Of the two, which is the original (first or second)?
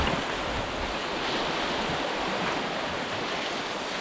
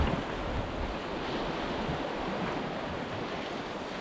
second